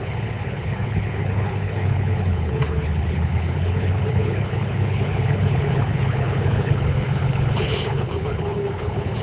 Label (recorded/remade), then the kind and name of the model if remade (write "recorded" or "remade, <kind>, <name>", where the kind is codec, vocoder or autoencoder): remade, codec, HILCodec